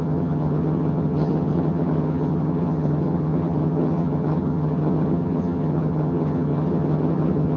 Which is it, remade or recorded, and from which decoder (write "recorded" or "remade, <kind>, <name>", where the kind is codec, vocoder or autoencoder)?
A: remade, vocoder, HiFi-GAN